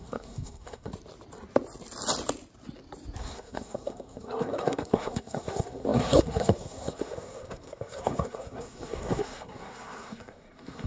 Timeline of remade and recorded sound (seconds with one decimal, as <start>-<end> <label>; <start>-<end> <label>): 0.0-0.9 remade; 0.9-3.2 recorded; 3.2-10.9 remade